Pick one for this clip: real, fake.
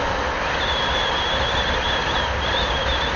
real